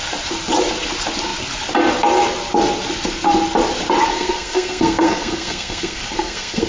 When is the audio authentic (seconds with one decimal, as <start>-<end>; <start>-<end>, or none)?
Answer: 0.0-4.1